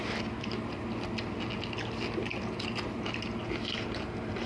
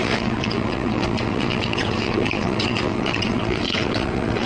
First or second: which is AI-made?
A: second